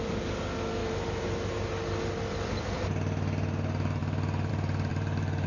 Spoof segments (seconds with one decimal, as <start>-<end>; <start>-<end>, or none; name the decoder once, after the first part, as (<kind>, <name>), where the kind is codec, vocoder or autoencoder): 0.8-1.7 (vocoder, BigVGAN v2); 4.9-5.5